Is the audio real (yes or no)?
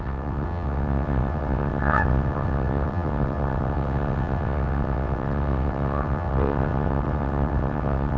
no